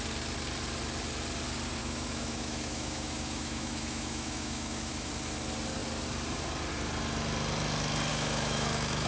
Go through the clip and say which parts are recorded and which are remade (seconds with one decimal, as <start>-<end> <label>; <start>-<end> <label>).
0.0-1.8 recorded; 1.8-5.1 remade; 5.1-8.1 recorded; 8.1-9.1 remade